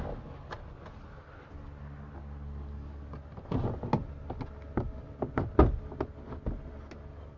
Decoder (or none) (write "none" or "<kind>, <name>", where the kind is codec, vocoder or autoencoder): none